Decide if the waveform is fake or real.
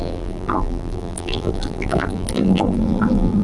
fake